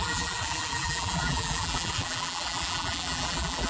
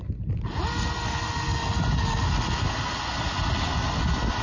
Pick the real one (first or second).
second